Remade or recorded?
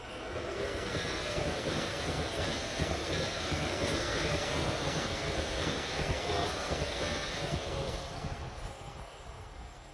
remade